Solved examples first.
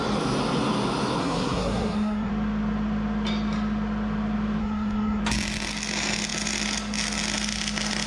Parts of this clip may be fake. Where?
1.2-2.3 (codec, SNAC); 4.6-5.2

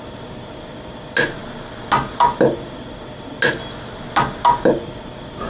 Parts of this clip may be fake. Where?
none